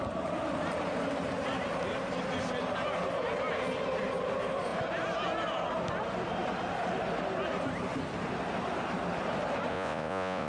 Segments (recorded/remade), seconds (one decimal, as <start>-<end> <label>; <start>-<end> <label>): 0.0-9.7 recorded; 9.7-10.5 remade